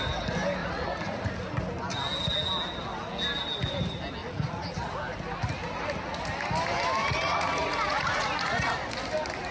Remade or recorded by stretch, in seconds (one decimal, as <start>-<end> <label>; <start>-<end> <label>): 0.0-0.6 recorded; 0.6-1.3 remade; 1.3-4.2 recorded; 4.2-4.9 remade; 4.9-7.0 recorded; 7.0-8.7 remade; 8.7-9.5 recorded